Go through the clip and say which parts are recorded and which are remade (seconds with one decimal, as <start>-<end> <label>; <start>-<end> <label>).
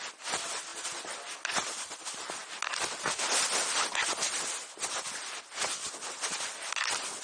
0.0-7.2 recorded